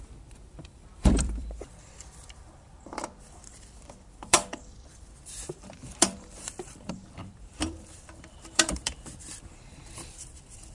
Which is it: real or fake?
fake